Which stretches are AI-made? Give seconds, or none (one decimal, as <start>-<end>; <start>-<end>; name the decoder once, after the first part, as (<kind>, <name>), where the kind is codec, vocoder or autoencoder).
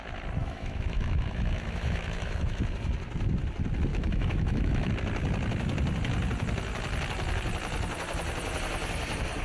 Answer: 0.4-2.6 (autoencoder, DAC-VAE); 3.9-4.9